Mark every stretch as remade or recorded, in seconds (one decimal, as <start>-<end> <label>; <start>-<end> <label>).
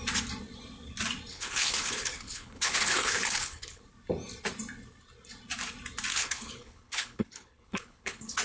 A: 0.0-1.3 recorded; 1.3-3.8 remade; 3.8-6.1 recorded; 6.1-8.4 remade